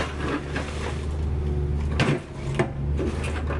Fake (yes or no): no